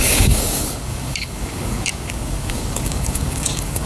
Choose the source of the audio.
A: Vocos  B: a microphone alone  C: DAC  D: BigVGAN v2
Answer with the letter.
C